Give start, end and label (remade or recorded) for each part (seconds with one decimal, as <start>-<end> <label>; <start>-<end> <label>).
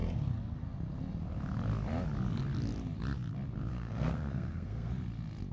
0.0-3.7 recorded; 3.7-4.9 remade; 4.9-5.5 recorded